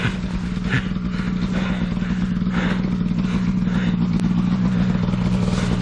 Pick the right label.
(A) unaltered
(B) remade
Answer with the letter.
A